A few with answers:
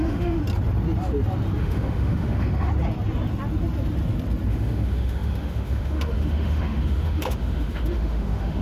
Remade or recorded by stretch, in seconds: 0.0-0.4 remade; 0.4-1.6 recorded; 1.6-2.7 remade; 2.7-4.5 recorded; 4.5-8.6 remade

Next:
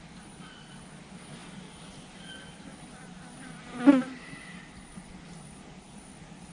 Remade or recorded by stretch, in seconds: 0.0-6.5 recorded